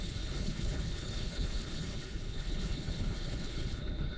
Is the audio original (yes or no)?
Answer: no